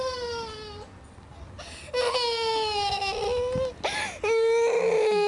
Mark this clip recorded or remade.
recorded